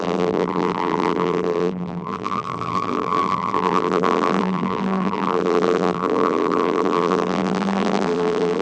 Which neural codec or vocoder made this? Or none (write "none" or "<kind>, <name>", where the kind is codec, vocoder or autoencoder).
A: vocoder, BigVGAN v2